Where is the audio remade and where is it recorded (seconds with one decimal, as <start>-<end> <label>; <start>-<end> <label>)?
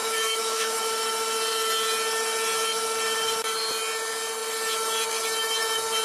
0.0-0.8 remade; 0.8-6.0 recorded